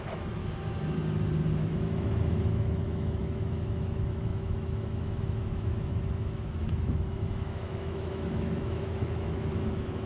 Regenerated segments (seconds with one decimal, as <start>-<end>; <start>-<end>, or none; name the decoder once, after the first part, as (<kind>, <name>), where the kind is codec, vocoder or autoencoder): 0.0-0.4 (autoencoder, DAC-VAE); 1.6-10.1